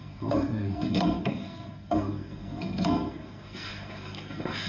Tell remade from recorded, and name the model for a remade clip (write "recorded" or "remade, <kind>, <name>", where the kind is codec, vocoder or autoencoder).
remade, codec, SNAC